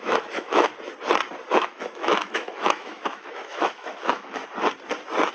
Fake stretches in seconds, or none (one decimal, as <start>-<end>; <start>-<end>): 0.0-0.7; 1.5-4.4